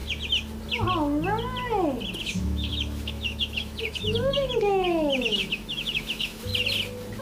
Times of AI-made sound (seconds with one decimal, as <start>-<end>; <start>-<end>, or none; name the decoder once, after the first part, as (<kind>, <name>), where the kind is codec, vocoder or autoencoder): 2.2-6.5 (autoencoder, DAC-VAE)